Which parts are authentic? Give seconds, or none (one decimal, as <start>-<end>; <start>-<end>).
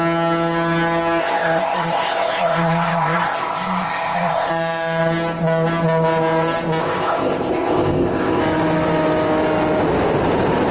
0.0-1.2; 4.5-6.8; 8.4-10.7